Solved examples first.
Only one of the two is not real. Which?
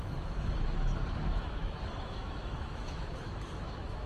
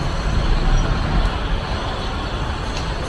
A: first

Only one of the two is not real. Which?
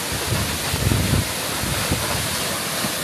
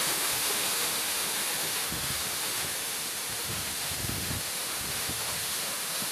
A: second